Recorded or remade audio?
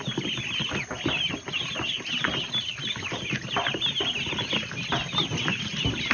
recorded